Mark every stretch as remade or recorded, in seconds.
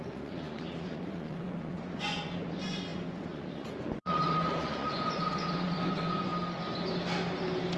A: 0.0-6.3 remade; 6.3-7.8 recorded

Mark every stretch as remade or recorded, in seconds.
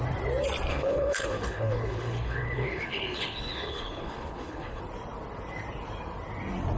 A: 0.0-0.7 recorded; 0.7-4.8 remade; 4.8-6.8 recorded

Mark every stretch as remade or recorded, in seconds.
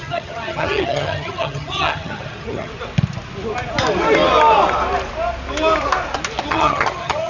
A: 0.0-2.7 remade; 2.7-6.5 recorded; 6.5-7.3 remade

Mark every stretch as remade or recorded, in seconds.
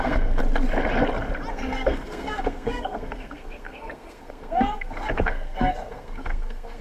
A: 0.0-0.4 remade; 0.4-1.5 recorded; 1.5-6.8 remade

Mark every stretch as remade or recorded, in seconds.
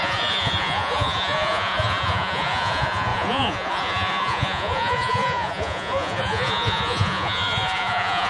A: 0.0-8.3 remade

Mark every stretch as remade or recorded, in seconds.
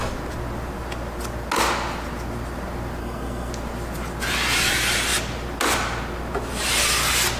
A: 0.0-3.0 recorded; 3.0-3.5 remade; 3.5-7.4 recorded